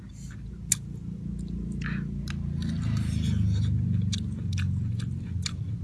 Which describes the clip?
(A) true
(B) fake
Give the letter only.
A